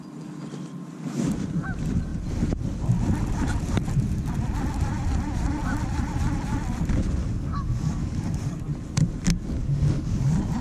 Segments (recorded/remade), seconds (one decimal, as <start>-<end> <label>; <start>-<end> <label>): 0.0-7.2 recorded; 7.2-8.6 remade; 8.6-9.6 recorded; 9.6-10.2 remade; 10.2-10.6 recorded